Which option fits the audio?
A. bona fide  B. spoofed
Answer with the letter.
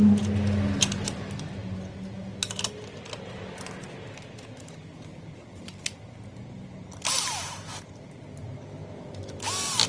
A